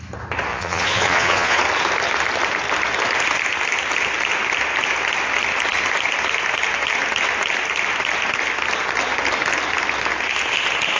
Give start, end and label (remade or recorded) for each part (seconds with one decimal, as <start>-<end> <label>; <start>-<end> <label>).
0.0-0.5 recorded; 0.5-1.6 remade; 1.6-11.0 recorded